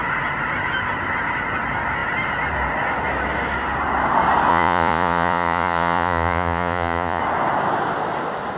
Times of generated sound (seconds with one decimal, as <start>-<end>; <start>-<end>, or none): 4.5-7.2